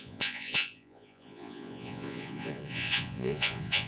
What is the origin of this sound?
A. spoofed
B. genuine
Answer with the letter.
A